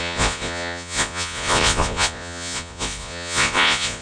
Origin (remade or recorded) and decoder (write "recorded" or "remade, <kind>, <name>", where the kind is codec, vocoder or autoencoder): remade, vocoder, Vocos